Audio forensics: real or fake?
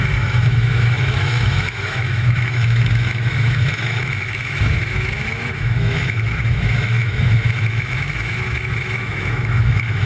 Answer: fake